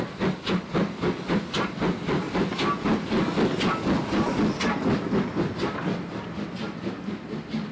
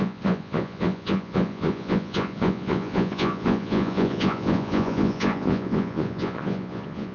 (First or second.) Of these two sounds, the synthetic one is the second